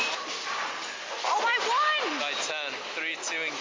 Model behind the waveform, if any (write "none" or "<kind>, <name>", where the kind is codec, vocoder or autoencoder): none